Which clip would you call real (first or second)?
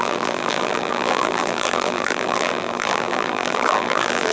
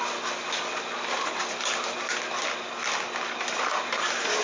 second